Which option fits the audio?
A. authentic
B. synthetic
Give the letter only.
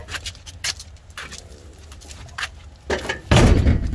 A